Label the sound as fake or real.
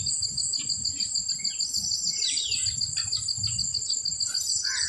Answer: real